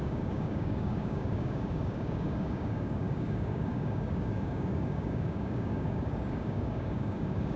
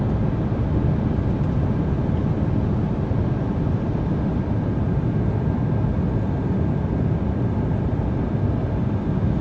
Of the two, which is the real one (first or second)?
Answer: second